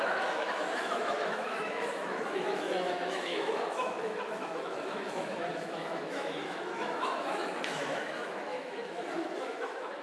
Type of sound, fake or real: fake